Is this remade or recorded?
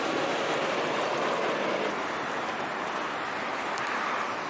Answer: recorded